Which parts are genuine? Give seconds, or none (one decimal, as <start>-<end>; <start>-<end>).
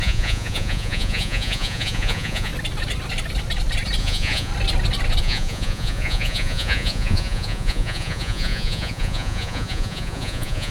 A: 2.5-4.0; 4.5-5.2